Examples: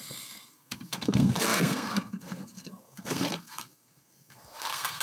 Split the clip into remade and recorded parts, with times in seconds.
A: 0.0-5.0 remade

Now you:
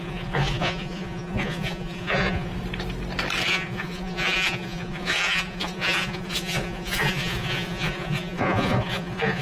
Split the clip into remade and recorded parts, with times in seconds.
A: 0.0-2.5 remade; 2.5-3.5 recorded; 3.5-9.4 remade